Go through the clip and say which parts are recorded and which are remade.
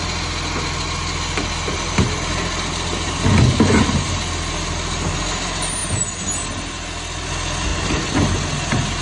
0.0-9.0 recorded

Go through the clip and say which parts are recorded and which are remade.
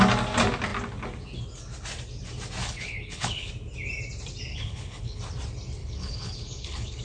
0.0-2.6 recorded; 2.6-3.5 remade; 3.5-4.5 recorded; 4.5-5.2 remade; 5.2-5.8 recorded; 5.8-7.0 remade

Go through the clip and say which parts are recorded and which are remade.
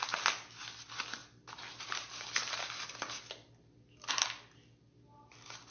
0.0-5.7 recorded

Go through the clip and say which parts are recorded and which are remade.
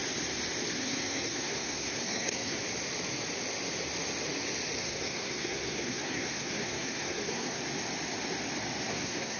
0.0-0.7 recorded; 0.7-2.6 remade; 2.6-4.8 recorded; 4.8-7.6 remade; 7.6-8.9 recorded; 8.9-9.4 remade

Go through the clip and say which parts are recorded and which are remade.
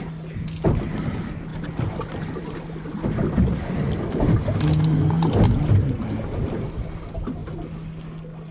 0.0-8.5 recorded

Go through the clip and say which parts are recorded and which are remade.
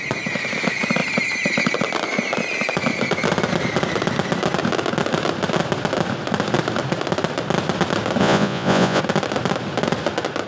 0.0-8.2 recorded; 8.2-9.0 remade; 9.0-10.5 recorded